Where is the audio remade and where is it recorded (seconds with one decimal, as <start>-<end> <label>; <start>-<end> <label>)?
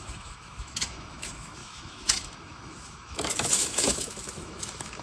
0.0-5.0 remade